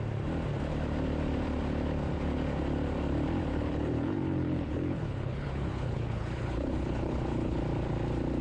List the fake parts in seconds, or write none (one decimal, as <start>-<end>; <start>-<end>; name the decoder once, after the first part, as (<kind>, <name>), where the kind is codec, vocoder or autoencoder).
3.5-7.6 (codec, HILCodec)